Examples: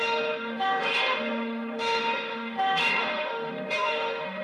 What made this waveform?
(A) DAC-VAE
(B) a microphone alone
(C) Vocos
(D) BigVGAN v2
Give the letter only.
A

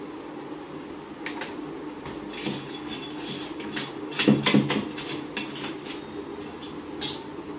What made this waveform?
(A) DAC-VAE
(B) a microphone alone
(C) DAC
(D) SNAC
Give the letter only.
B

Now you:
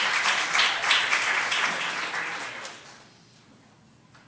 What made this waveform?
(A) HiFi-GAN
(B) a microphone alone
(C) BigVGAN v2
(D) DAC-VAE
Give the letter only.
B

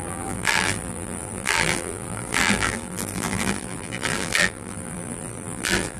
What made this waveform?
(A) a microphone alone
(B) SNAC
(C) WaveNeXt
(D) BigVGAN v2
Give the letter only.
D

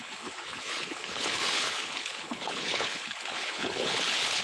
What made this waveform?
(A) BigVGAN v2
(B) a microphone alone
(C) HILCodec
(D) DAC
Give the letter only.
C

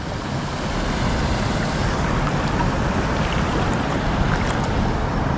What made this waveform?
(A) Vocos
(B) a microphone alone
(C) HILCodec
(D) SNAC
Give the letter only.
B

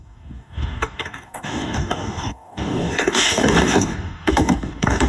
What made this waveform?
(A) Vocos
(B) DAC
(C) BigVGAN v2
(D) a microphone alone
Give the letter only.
B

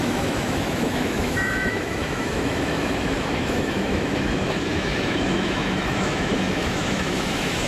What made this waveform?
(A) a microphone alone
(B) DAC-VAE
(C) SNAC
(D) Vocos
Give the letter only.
B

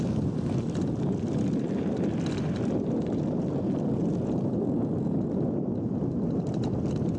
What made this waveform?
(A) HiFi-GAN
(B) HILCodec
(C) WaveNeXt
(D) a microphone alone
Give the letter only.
D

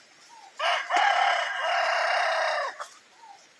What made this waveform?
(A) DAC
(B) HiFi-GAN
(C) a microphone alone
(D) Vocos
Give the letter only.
C